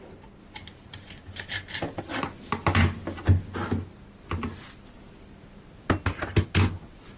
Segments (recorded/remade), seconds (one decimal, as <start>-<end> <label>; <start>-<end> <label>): 0.0-7.2 recorded